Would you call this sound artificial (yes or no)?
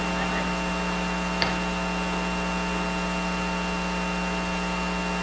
no